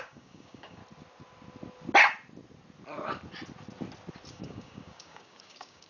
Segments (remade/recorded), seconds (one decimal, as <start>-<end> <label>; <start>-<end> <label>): 0.0-0.8 remade; 0.8-4.3 recorded; 4.3-5.9 remade